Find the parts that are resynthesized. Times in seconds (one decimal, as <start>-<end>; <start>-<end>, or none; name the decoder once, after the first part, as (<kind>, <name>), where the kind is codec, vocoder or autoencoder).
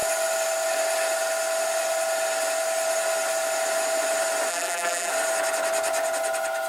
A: 4.5-5.1 (vocoder, BigVGAN v2)